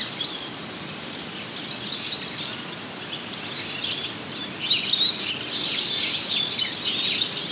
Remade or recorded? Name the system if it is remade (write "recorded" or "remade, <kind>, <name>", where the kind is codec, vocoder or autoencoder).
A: recorded